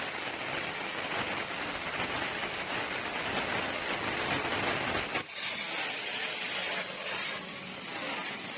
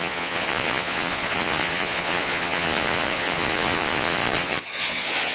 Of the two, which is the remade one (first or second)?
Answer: second